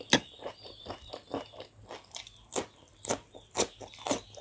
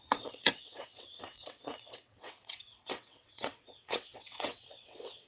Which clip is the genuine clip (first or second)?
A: first